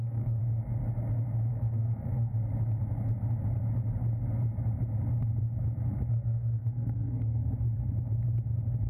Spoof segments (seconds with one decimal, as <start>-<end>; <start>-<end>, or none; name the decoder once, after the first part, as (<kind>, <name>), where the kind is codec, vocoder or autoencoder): 0.0-0.4 (codec, SNAC); 1.5-2.3; 6.1-7.4